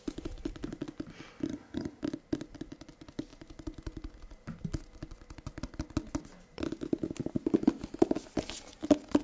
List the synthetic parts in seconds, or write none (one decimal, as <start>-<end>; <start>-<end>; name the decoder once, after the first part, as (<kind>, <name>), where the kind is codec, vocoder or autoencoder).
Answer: 1.5-2.0 (vocoder, HiFi-GAN)

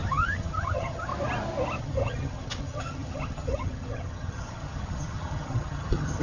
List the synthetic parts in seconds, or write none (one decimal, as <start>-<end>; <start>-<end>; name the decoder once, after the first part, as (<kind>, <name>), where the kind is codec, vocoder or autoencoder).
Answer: 0.0-1.1 (vocoder, HiFi-GAN); 1.8-6.2

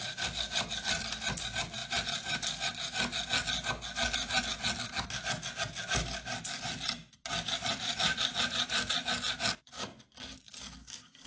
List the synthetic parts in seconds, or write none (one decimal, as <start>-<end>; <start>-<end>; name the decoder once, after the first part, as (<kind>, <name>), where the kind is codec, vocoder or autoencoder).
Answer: none